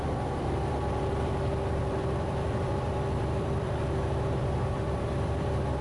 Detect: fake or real fake